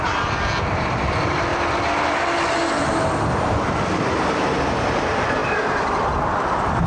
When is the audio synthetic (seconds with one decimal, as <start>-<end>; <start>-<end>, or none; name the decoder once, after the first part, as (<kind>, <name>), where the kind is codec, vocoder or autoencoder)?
0.0-1.5 (vocoder, BigVGAN v2); 4.8-6.9